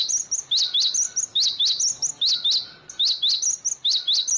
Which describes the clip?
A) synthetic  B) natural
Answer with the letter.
B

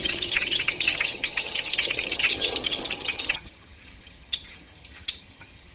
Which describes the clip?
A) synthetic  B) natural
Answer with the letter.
A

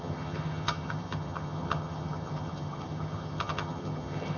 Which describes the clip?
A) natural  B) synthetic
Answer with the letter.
B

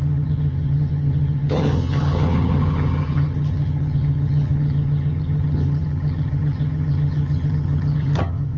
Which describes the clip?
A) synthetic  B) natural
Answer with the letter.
A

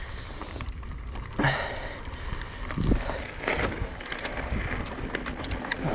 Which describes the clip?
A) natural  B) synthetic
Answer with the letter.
A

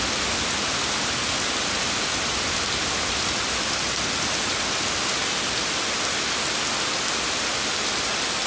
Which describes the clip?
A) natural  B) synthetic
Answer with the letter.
A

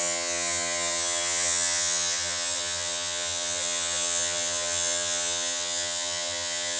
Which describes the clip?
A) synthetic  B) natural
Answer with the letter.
A